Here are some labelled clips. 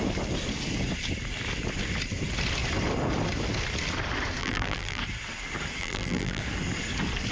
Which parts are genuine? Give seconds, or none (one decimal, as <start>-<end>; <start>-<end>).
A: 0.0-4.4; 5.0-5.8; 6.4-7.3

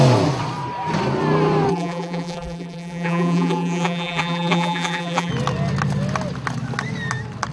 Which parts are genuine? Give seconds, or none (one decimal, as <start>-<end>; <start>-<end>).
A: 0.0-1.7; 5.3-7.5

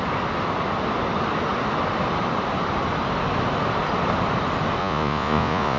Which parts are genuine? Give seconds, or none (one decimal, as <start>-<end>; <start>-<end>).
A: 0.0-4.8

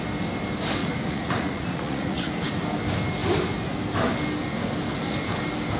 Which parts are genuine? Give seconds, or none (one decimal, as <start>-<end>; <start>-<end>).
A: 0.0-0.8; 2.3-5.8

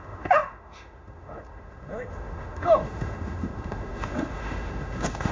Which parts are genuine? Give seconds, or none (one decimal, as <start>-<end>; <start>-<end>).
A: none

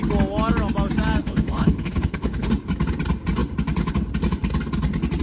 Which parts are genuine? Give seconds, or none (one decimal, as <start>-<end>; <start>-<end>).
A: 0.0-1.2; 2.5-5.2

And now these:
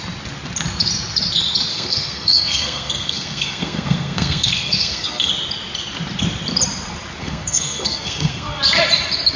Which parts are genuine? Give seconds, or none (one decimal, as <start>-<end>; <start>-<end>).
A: 0.0-1.7; 5.3-7.2; 8.6-9.4

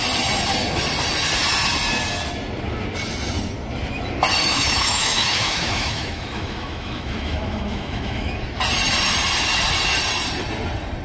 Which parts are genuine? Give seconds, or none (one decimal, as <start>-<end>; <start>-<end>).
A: 0.0-4.5; 8.4-11.0